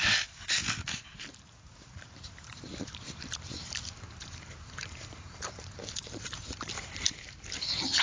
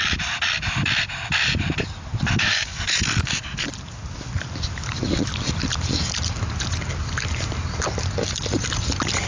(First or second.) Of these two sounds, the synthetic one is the first